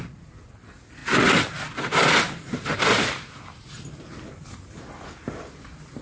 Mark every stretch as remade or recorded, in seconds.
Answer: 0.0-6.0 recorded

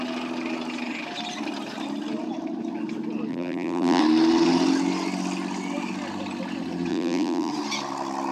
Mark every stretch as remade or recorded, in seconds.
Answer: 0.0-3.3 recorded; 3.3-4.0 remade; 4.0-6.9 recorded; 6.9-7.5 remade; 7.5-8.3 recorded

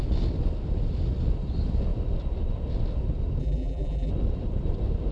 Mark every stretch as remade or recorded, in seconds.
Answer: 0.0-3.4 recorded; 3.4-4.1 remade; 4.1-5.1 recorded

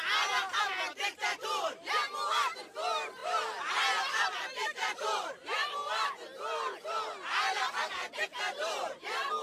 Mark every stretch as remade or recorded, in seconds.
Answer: 0.0-9.4 recorded

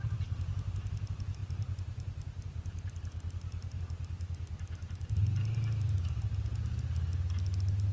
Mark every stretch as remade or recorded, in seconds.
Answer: 0.0-1.4 recorded; 1.4-3.8 remade; 3.8-7.9 recorded

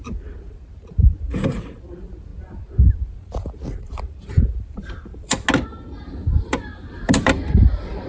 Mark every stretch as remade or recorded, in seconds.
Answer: 0.0-2.3 remade; 2.3-2.9 recorded; 2.9-5.3 remade; 5.3-6.4 recorded; 6.4-8.1 remade

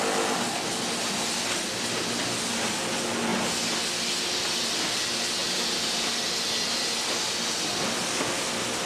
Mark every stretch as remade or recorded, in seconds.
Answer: 0.0-5.4 recorded; 5.4-6.1 remade; 6.1-8.9 recorded